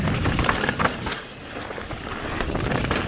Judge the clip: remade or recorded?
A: recorded